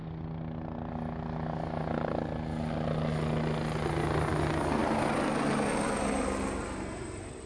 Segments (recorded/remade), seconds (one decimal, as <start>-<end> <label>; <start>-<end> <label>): 0.0-7.5 recorded